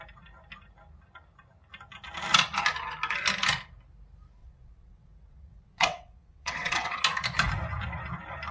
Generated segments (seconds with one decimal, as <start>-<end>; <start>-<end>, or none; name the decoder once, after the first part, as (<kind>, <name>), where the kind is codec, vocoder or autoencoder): 4.4-7.0 (vocoder, WaveNeXt)